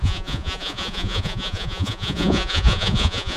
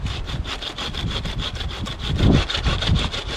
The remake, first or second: first